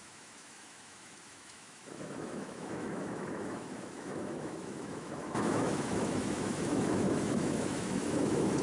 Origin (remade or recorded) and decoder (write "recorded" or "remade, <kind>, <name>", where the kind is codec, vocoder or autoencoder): remade, autoencoder, DAC-VAE